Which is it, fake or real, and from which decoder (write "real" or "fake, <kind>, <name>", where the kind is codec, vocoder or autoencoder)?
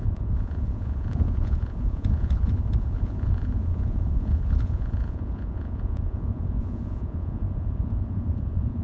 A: fake, vocoder, Vocos